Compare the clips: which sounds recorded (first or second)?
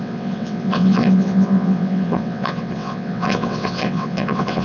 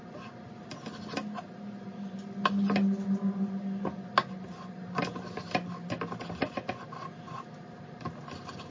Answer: second